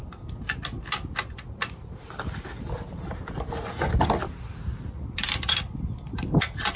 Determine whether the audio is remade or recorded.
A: recorded